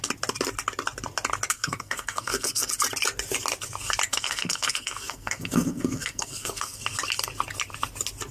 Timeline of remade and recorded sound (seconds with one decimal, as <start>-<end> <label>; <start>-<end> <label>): 0.0-1.5 recorded; 1.5-2.7 remade; 2.7-4.1 recorded; 4.1-6.8 remade; 6.8-8.3 recorded